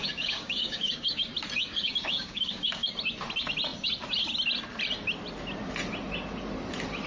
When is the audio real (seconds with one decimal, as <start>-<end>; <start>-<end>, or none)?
1.2-1.6; 2.9-7.1